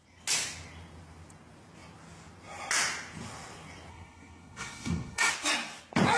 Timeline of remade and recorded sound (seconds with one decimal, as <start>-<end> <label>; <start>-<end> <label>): 0.0-3.9 recorded; 3.9-5.3 remade; 5.3-6.2 recorded